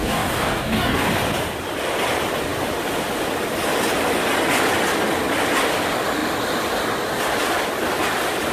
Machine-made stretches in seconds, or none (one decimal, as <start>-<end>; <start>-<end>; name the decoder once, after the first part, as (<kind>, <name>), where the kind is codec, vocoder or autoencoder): 0.0-1.2 (codec, DAC)